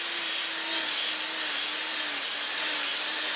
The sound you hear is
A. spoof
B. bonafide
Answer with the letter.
B